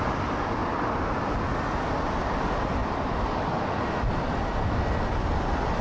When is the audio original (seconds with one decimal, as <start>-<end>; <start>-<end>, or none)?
0.0-5.8